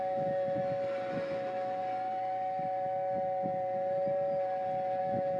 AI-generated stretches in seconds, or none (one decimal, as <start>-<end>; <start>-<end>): 0.0-0.6; 1.1-1.8; 5.0-5.4

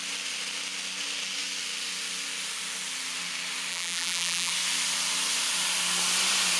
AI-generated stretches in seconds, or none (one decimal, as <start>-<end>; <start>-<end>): 3.7-4.5